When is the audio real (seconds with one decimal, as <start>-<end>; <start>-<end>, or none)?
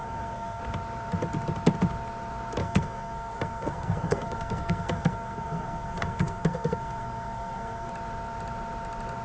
0.6-2.6; 7.9-9.2